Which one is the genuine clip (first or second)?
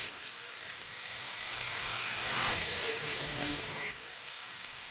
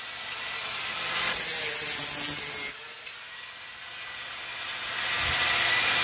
second